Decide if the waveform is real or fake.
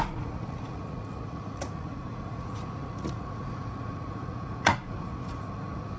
fake